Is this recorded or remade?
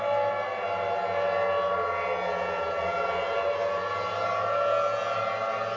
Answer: recorded